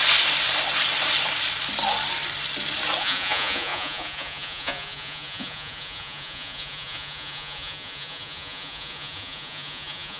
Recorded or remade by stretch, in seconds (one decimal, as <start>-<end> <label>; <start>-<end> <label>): 0.0-3.0 recorded; 3.0-10.2 remade

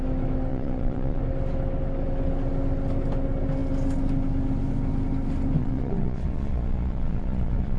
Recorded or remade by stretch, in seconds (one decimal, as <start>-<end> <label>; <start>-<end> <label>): 0.0-0.5 recorded; 0.5-1.2 remade; 1.2-5.6 recorded; 5.6-7.8 remade